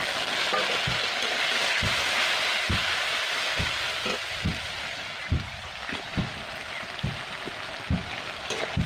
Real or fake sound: real